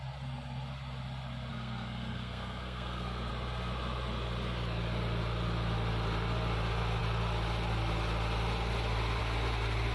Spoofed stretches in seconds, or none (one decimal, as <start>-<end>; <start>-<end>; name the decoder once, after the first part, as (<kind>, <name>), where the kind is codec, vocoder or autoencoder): 1.5-3.3 (codec, SNAC)